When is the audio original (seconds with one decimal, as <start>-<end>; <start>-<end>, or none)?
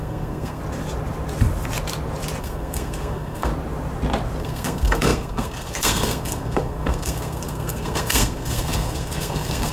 0.6-2.4; 3.5-4.4